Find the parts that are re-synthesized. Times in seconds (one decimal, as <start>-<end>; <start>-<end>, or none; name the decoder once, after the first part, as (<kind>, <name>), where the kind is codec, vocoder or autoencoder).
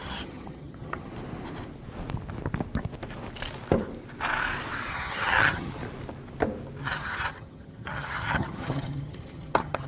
0.0-1.1 (vocoder, HiFi-GAN); 4.9-5.8; 6.8-9.9